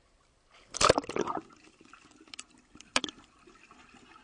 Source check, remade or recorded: recorded